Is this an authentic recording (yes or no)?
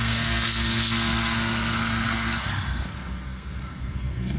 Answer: no